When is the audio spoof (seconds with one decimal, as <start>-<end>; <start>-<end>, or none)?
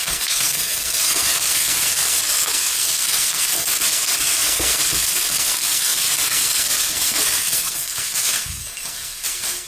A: 0.0-9.7